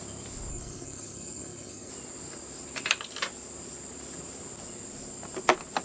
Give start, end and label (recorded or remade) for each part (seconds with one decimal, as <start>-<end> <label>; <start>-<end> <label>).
0.0-0.5 recorded; 0.5-1.9 remade; 1.9-5.8 recorded